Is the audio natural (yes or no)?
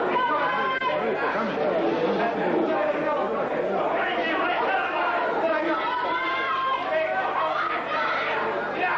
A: yes